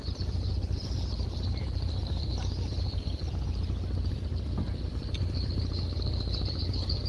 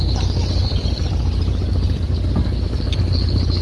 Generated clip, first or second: first